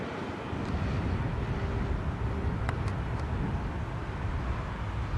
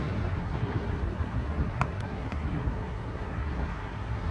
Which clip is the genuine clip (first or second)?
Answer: first